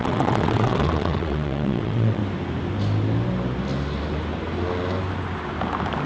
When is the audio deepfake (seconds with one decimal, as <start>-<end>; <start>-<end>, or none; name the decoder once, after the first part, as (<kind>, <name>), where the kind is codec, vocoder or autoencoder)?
0.0-2.2 (vocoder, WaveNeXt)

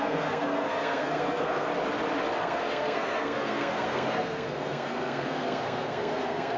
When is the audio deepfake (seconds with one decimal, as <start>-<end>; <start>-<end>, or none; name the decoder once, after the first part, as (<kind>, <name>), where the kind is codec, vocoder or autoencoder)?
0.0-1.7 (codec, SNAC); 2.4-6.6

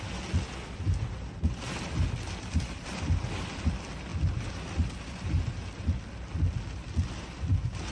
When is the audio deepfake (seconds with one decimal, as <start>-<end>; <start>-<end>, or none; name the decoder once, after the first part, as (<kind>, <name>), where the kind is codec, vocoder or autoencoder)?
none

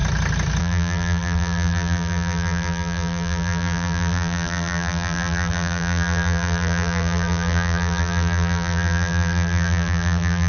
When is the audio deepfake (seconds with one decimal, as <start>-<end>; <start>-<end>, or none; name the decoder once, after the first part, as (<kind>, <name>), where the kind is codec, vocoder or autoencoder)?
0.6-10.5 (vocoder, BigVGAN v2)